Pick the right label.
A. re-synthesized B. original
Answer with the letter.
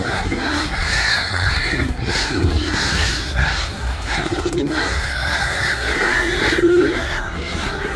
A